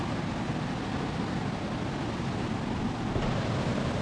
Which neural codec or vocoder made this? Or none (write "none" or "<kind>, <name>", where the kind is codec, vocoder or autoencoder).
none